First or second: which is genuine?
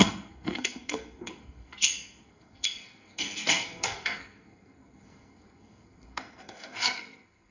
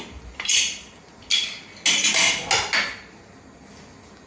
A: second